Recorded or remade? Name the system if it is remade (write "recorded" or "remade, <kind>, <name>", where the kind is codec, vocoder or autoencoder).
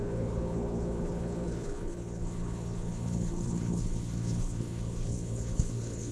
remade, codec, HILCodec